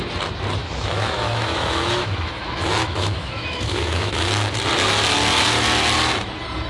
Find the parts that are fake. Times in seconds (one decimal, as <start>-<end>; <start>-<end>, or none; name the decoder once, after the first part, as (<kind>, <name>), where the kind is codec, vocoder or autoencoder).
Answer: 0.6-4.6 (autoencoder, DAC-VAE)